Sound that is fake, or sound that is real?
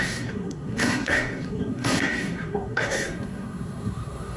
fake